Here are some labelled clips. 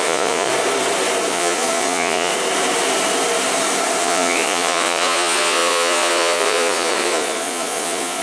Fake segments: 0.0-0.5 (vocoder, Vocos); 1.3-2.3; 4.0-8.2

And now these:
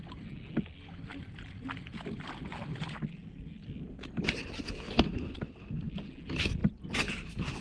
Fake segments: none

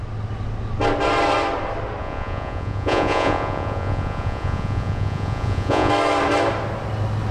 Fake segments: 2.0-5.9 (vocoder, Vocos)

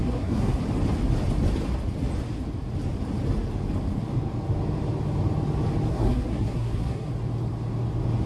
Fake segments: 0.0-0.6 (codec, SNAC); 5.9-7.1